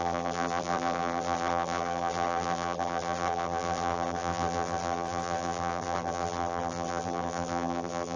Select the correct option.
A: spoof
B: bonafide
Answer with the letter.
A